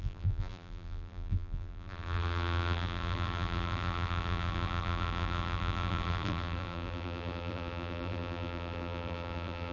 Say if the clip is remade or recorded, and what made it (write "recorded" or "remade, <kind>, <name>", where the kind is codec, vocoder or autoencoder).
remade, vocoder, BigVGAN v2